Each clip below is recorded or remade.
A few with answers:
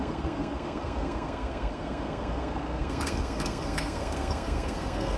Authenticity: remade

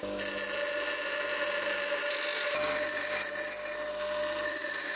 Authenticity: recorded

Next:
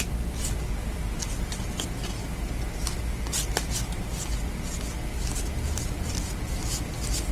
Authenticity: recorded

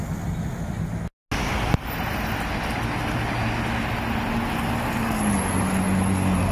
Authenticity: recorded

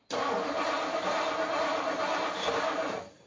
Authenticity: recorded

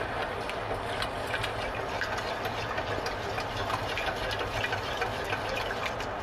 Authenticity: recorded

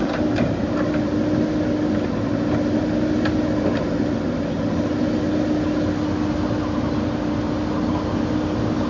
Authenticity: recorded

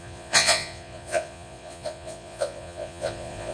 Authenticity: remade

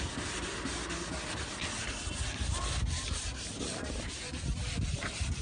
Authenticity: recorded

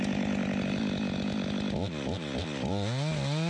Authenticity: recorded